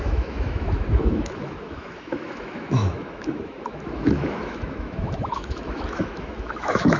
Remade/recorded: remade